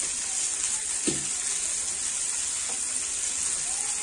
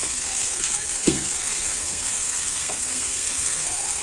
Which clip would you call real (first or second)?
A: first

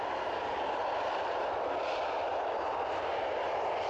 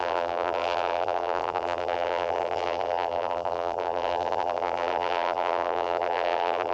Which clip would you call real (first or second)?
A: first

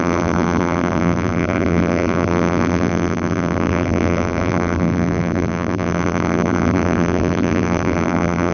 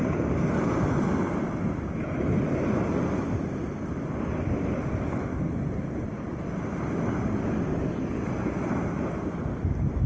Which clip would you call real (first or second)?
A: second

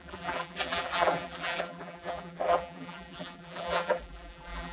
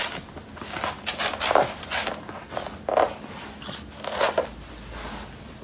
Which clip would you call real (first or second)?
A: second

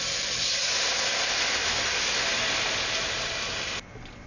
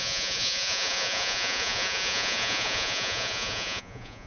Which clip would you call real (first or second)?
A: first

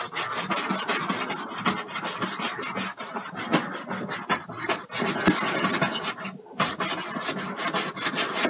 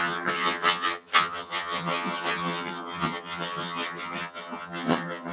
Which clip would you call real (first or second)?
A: first